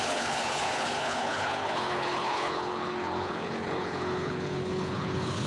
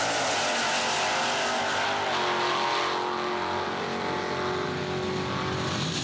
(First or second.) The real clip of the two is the second